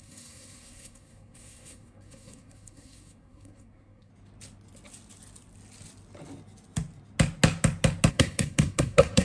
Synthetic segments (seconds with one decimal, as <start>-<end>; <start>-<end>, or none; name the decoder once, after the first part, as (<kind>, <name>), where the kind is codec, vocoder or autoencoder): 0.0-4.1 (codec, SNAC); 8.1-9.2